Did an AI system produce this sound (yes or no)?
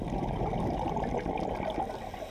no